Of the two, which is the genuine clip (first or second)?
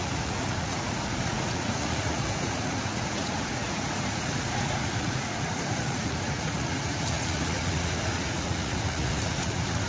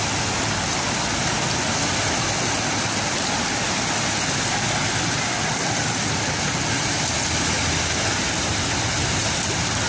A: second